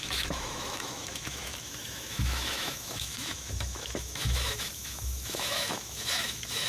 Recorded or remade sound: remade